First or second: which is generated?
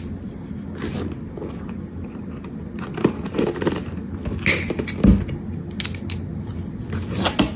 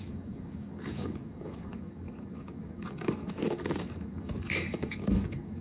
second